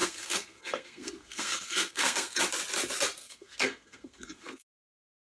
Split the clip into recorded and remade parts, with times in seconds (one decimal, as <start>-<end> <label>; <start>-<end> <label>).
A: 0.0-2.4 remade; 2.4-3.2 recorded; 3.2-5.0 remade; 5.0-5.4 recorded